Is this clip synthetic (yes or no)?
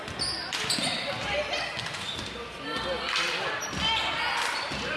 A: no